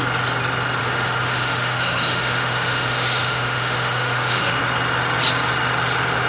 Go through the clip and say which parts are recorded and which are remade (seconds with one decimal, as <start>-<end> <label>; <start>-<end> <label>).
0.0-0.8 recorded; 0.8-4.6 remade; 4.6-6.3 recorded